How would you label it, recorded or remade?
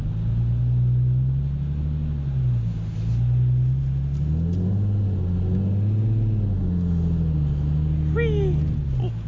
recorded